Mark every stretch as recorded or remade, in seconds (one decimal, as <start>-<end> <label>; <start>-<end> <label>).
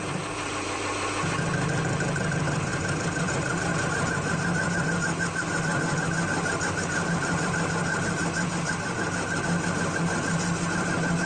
0.0-3.7 remade; 3.7-4.8 recorded; 4.8-5.7 remade; 5.7-6.6 recorded; 6.6-9.4 remade; 9.4-11.3 recorded